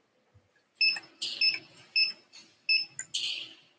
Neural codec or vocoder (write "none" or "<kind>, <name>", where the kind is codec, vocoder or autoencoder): none